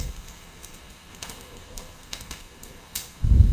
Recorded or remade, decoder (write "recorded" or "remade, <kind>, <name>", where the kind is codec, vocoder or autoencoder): remade, codec, SNAC